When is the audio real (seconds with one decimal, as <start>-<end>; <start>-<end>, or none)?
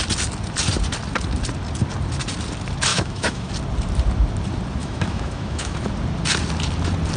0.0-2.9; 3.5-4.8; 5.8-7.2